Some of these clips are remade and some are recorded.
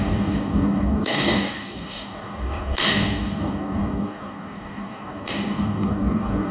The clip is remade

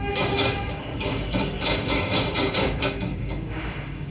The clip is remade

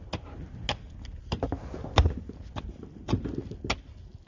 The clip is recorded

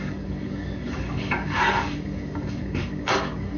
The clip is remade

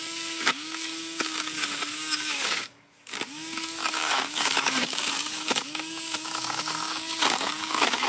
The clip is remade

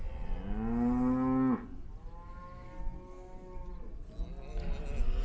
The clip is recorded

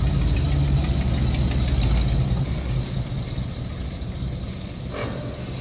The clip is recorded